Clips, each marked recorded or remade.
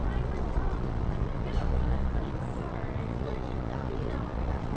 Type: remade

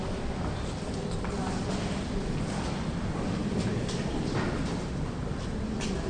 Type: recorded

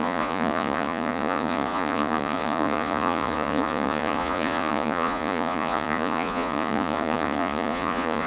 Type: remade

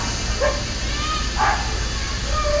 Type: recorded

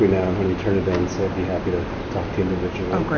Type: recorded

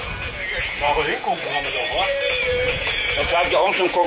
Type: remade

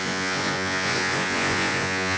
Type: remade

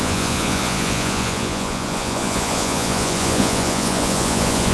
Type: remade